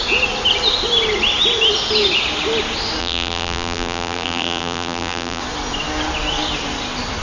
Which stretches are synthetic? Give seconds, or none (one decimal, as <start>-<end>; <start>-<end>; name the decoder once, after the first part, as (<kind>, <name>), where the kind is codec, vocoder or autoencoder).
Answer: 3.0-5.4 (vocoder, BigVGAN v2)